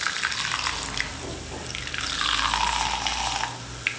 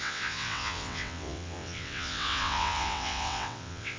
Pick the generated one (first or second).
second